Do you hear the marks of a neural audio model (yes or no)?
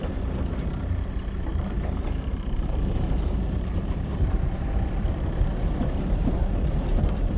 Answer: yes